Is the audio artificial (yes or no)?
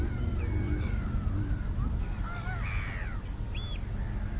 no